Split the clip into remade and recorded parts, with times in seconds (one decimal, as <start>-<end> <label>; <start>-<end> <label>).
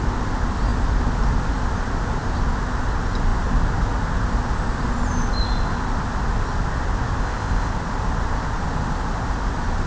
0.0-7.2 recorded; 7.2-7.7 remade; 7.7-9.9 recorded